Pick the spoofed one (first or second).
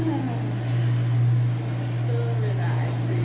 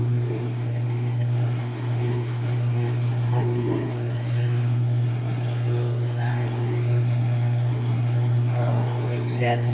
second